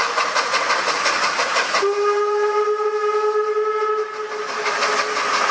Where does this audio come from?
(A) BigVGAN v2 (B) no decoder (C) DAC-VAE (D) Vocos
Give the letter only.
B